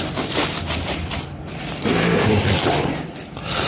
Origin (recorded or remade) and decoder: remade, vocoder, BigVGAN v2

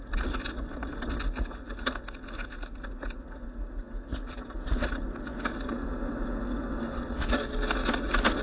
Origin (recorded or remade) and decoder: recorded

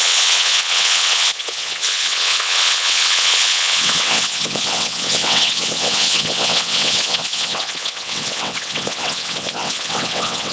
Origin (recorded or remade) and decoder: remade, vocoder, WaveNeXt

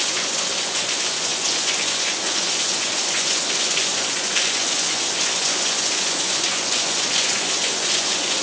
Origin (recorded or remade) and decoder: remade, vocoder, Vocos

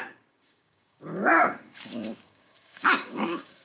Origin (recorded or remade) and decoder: remade, codec, DAC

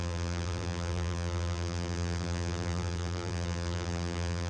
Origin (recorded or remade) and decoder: remade, vocoder, BigVGAN v2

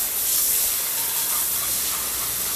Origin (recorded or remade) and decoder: recorded